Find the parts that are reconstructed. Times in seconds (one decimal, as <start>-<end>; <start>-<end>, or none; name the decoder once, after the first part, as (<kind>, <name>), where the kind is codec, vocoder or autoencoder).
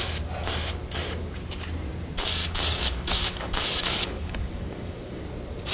2.4-5.2 (codec, DAC)